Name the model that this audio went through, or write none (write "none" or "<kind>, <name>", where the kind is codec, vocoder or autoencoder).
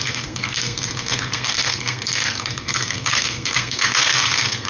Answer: codec, SNAC